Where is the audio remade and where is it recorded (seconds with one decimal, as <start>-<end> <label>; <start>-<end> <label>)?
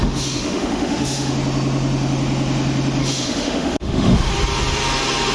0.0-1.3 remade; 1.3-3.0 recorded; 3.0-4.3 remade; 4.3-5.3 recorded